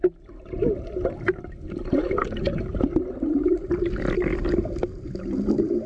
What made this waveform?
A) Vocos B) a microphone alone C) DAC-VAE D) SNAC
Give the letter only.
B